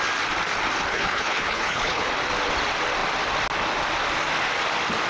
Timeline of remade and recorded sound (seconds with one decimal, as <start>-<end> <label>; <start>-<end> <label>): 0.0-0.9 recorded; 0.9-2.1 remade; 2.1-5.1 recorded